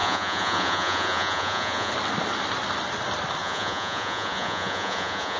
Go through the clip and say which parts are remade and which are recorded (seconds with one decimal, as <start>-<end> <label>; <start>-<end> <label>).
0.0-1.9 remade; 1.9-3.4 recorded; 3.4-5.4 remade